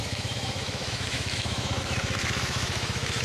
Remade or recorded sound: remade